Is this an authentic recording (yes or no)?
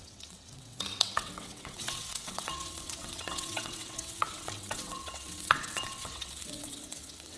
no